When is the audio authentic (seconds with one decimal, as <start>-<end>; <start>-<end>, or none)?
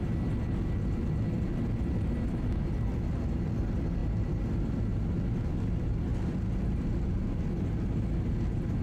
0.0-8.8